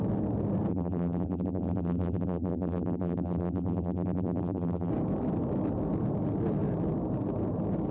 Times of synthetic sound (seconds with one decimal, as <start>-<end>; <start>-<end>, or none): 0.7-4.9